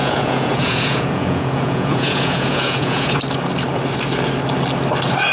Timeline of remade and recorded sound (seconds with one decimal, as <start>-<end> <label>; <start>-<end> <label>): 0.0-3.2 remade; 3.2-5.3 recorded